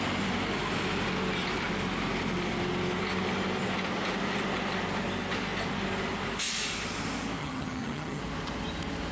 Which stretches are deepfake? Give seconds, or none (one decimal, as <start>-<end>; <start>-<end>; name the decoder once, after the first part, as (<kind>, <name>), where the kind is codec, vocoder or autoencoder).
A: 7.4-8.2 (vocoder, HiFi-GAN)